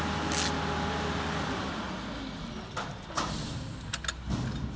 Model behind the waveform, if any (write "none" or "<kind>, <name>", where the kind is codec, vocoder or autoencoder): none